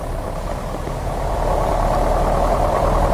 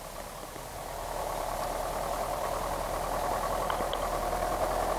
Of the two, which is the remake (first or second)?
first